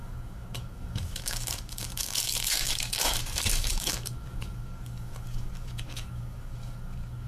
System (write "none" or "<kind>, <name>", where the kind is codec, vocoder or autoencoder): codec, DAC